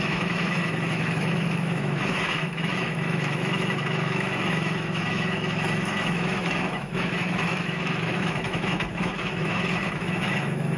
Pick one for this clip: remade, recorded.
remade